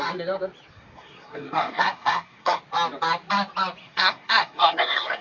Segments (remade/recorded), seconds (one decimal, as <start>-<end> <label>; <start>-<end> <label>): 0.0-0.7 recorded; 0.7-2.6 remade; 2.6-3.8 recorded; 3.8-5.2 remade